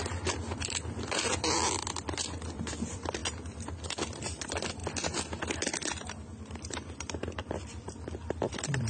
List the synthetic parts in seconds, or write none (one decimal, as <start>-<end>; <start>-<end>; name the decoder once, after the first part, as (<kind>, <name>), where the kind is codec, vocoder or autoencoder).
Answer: 0.0-3.2 (vocoder, BigVGAN v2); 4.2-4.8; 6.4-8.9